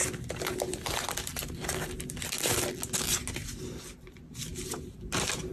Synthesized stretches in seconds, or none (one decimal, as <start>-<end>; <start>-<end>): none